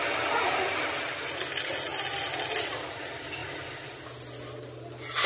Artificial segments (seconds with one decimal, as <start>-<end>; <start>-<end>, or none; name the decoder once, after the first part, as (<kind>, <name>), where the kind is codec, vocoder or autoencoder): none